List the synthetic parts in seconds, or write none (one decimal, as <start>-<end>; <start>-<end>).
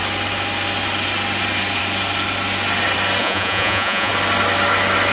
3.2-4.1